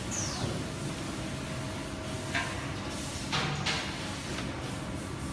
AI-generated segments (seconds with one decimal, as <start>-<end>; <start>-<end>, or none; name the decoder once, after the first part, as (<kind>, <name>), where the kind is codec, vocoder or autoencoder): none